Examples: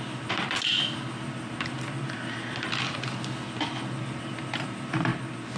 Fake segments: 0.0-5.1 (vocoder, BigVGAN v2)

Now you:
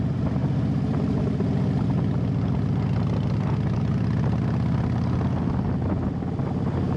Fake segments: none